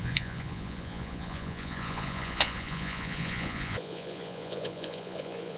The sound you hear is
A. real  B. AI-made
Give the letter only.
B